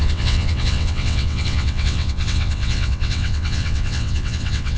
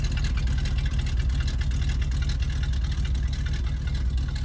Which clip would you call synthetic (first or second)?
first